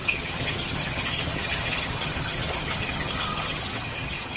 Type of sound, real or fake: fake